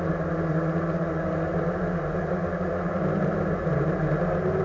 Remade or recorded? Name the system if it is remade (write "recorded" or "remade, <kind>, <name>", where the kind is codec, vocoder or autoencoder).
recorded